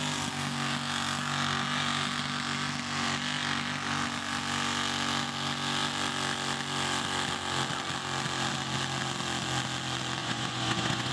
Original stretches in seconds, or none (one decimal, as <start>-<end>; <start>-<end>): 0.0-10.2